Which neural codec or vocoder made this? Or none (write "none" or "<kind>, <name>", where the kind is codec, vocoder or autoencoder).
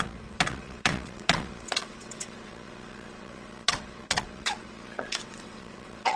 vocoder, WaveNeXt